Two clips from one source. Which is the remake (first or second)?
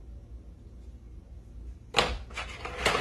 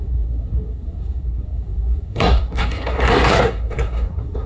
second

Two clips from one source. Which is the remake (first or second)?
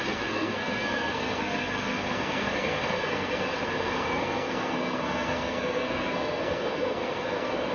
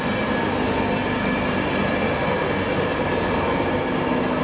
first